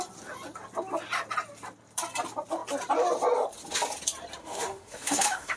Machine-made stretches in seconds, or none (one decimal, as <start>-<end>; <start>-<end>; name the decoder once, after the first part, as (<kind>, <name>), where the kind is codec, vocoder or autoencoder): 4.4-5.6 (autoencoder, DAC-VAE)